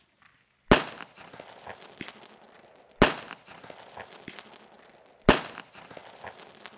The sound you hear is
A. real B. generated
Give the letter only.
A